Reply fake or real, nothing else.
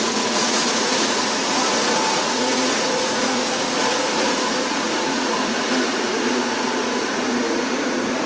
fake